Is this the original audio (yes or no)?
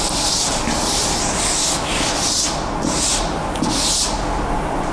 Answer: yes